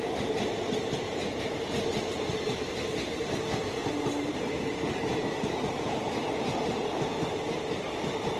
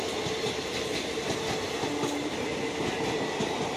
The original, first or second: second